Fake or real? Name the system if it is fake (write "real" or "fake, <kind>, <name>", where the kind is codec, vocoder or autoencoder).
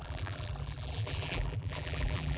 fake, vocoder, BigVGAN v2